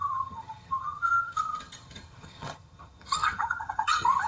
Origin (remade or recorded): remade